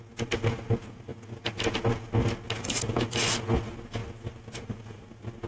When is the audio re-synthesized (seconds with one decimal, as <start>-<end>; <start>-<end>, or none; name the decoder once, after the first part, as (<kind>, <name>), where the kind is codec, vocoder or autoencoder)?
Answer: none